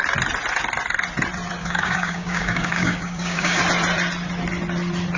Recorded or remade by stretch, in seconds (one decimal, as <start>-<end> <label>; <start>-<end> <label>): 0.0-1.6 recorded; 1.6-3.6 remade; 3.6-5.2 recorded